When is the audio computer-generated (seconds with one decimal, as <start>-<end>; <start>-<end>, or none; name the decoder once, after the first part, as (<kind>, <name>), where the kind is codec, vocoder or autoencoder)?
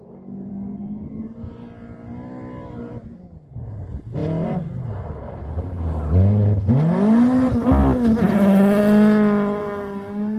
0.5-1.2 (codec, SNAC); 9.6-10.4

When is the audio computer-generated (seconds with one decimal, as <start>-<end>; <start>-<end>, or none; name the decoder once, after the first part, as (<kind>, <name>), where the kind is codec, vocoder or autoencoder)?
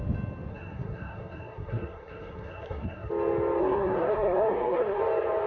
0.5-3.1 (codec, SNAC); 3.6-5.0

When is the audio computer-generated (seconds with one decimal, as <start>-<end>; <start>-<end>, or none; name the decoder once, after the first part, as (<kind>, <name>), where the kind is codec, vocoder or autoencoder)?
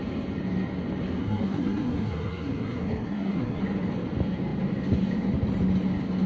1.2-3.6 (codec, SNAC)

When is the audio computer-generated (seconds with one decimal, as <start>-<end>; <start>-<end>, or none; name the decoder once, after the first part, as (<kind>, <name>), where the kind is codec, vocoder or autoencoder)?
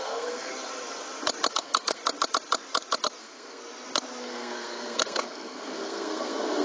0.0-0.5 (codec, SNAC); 1.5-2.0; 3.2-3.6; 4.2-6.6